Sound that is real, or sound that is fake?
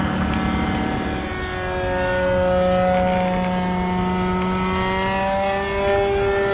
real